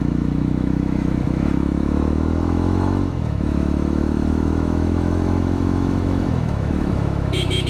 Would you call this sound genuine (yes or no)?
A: no